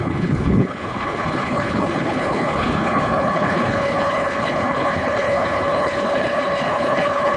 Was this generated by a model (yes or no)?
yes